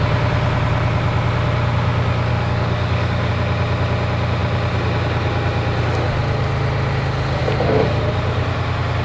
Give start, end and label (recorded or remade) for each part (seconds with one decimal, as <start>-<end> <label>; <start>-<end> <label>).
0.0-2.3 recorded; 2.3-3.3 remade; 3.3-9.0 recorded